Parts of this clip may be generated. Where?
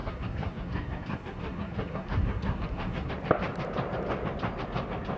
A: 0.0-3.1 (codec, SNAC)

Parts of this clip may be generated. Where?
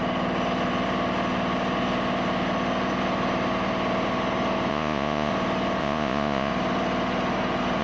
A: 4.7-5.3 (vocoder, Vocos); 5.8-6.5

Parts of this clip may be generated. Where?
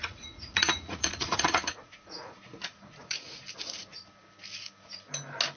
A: 0.0-3.4 (vocoder, Vocos)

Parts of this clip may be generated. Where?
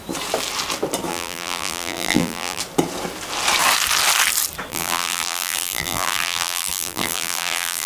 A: 1.1-2.6 (vocoder, BigVGAN v2); 4.7-7.9